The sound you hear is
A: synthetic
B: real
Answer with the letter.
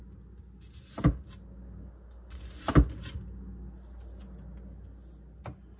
B